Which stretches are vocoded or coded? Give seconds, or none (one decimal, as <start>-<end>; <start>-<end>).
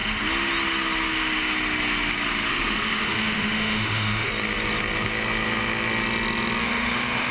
2.5-4.3; 6.6-7.3